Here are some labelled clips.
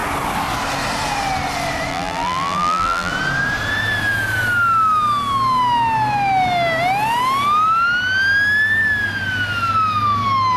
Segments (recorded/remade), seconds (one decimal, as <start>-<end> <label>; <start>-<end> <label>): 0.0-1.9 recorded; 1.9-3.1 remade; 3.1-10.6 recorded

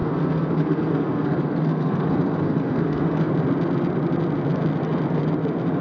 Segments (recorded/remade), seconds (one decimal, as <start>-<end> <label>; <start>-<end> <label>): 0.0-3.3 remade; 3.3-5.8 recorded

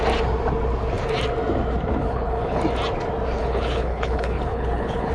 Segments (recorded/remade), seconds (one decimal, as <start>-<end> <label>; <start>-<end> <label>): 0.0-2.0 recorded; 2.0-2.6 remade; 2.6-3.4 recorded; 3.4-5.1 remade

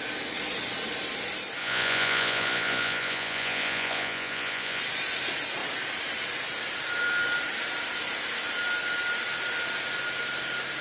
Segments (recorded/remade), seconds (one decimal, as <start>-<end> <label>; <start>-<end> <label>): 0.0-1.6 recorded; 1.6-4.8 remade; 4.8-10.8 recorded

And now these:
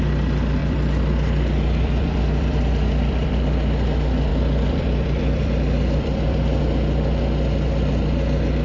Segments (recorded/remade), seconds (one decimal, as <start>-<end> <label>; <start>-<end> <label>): 0.0-0.6 recorded; 0.6-3.3 remade; 3.3-4.3 recorded; 4.3-6.6 remade; 6.6-8.6 recorded